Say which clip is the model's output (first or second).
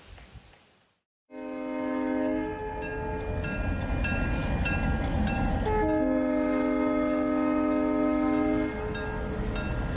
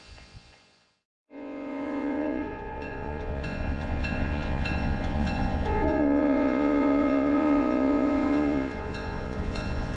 second